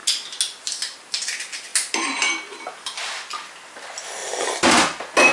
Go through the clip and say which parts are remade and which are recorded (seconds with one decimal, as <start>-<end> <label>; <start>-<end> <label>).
0.0-4.2 recorded; 4.2-4.8 remade; 4.8-5.3 recorded